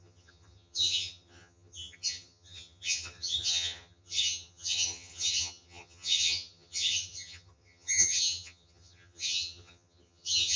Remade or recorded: remade